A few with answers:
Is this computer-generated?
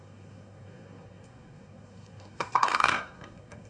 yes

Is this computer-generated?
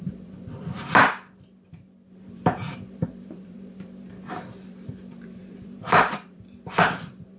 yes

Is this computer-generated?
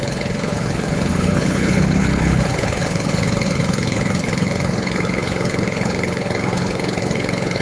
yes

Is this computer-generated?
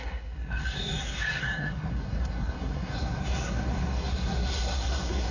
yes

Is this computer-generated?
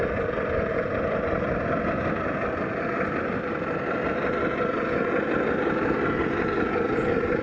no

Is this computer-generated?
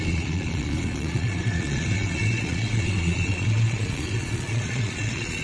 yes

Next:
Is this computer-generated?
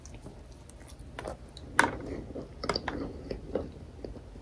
no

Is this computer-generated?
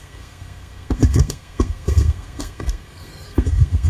yes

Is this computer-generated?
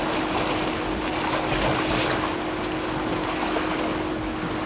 no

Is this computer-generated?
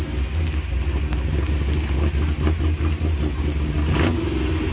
no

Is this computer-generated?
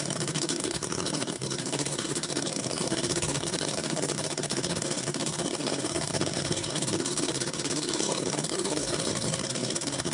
yes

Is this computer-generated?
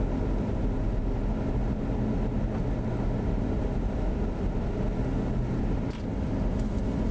no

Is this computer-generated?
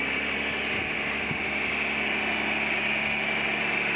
no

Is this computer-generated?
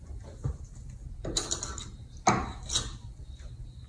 no